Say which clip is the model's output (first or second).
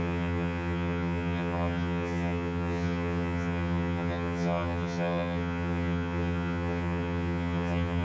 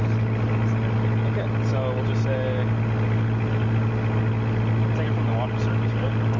first